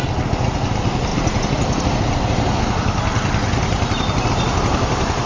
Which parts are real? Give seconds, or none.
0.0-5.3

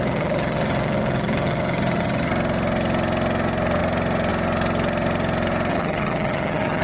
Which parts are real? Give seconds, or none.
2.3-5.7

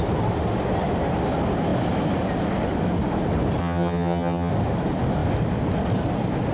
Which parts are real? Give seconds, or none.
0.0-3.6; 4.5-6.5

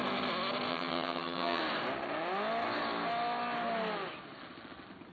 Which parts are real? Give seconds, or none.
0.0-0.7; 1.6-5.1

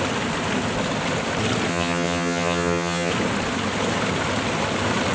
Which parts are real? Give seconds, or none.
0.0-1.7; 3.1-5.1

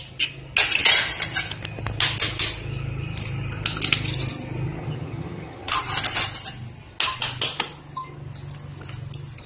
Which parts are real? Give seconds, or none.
0.0-4.8; 5.7-9.5